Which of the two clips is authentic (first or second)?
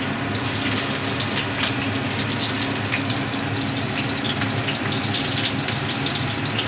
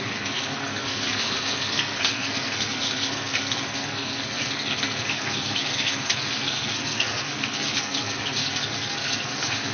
first